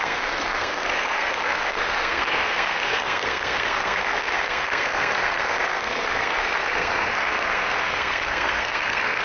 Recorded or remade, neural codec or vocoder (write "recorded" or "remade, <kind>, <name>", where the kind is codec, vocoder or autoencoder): remade, codec, SNAC